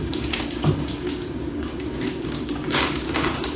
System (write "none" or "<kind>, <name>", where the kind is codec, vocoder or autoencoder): codec, DAC